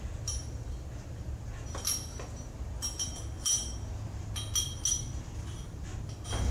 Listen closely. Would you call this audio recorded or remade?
recorded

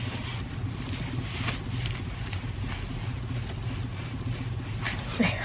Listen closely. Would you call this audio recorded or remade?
recorded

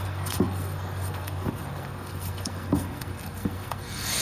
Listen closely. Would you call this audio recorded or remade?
remade